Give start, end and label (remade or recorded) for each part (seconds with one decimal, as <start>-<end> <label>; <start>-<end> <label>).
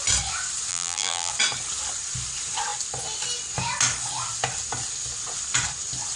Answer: 0.0-0.7 recorded; 0.7-1.3 remade; 1.3-6.2 recorded